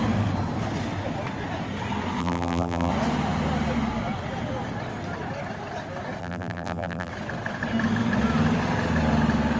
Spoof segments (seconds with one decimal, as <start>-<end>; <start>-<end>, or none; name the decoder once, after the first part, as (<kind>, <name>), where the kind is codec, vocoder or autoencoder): 2.2-2.9 (vocoder, BigVGAN v2); 6.2-7.1